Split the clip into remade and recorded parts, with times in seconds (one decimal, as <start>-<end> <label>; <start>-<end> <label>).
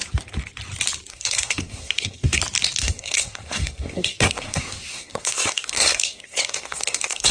0.0-1.1 recorded; 1.1-2.4 remade; 2.4-2.8 recorded; 2.8-7.3 remade